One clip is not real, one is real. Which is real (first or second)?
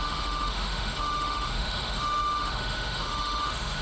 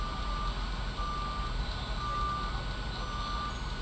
second